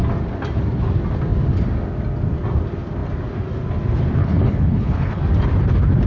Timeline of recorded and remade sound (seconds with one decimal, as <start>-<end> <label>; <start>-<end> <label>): 0.0-4.2 recorded; 4.2-5.2 remade; 5.2-6.1 recorded

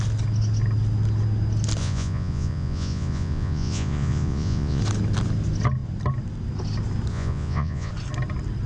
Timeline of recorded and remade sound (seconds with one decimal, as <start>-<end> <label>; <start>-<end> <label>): 0.0-1.8 recorded; 1.8-4.8 remade; 4.8-7.1 recorded; 7.1-7.9 remade; 7.9-8.7 recorded

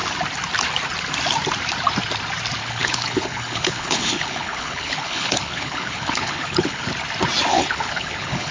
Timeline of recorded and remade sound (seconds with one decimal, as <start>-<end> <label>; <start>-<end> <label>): 0.0-2.6 recorded; 2.6-6.9 remade; 6.9-7.5 recorded; 7.5-8.5 remade

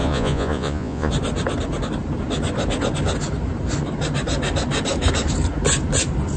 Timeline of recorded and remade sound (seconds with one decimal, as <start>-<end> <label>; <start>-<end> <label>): 0.0-1.1 remade; 1.1-6.4 recorded